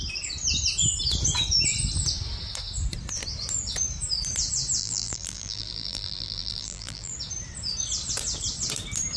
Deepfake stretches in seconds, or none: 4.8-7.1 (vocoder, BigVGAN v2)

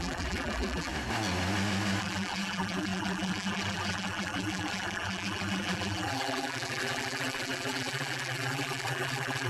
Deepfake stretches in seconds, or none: 0.0-0.9 (vocoder, BigVGAN v2); 2.0-9.5